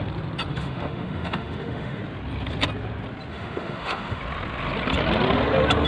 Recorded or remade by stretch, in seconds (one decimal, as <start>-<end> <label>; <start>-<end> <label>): 0.0-0.5 recorded; 0.5-2.0 remade; 2.0-3.3 recorded; 3.3-4.2 remade; 4.2-5.9 recorded